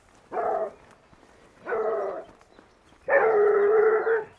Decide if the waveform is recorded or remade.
recorded